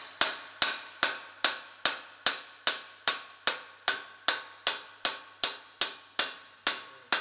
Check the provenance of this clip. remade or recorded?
recorded